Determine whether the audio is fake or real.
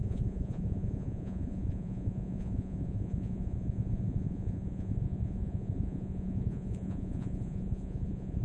fake